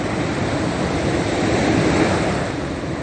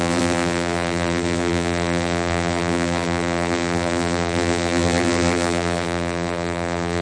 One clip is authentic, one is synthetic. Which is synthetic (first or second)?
second